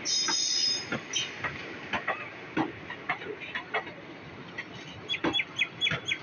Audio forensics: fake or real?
real